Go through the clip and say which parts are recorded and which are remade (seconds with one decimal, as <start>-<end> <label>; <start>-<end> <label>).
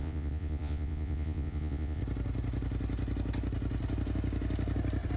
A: 0.0-2.0 remade; 2.0-5.2 recorded